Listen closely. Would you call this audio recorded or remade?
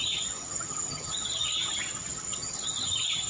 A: remade